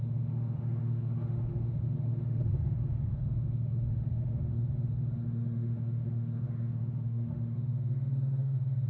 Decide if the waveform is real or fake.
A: fake